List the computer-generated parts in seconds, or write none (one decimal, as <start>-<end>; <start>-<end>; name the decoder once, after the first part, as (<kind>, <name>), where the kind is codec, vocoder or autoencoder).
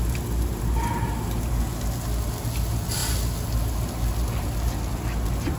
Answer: none